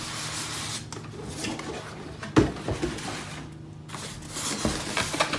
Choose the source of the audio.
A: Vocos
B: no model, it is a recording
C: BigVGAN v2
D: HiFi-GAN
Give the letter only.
B